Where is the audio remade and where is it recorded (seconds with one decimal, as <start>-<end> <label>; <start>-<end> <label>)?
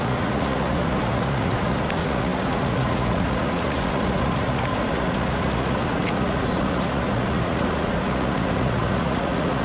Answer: 0.0-9.6 remade